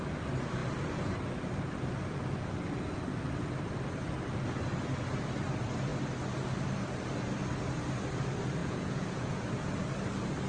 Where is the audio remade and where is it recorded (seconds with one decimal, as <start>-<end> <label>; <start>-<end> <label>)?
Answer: 0.0-8.6 recorded; 8.6-9.7 remade; 9.7-10.5 recorded